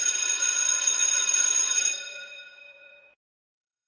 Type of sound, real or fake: fake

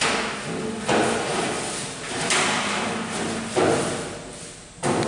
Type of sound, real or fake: real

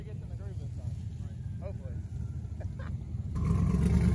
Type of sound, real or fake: real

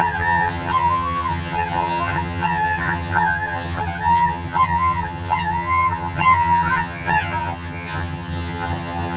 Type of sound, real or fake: fake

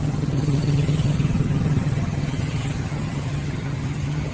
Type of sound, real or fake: fake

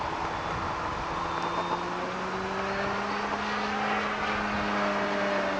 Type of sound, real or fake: real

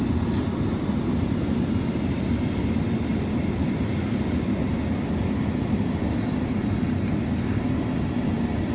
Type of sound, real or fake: real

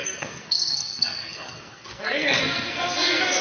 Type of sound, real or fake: fake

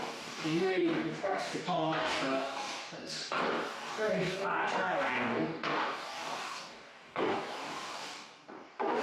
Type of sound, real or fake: fake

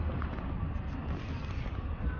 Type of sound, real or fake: real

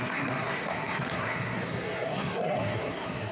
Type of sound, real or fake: fake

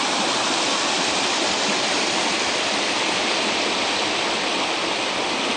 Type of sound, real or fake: real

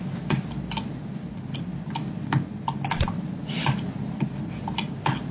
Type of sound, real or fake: real